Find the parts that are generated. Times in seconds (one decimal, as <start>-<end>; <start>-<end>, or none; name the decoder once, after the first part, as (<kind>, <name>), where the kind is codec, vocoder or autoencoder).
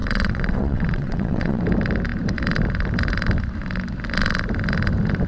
0.0-1.6 (vocoder, WaveNeXt)